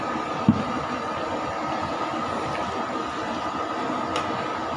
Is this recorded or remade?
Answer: recorded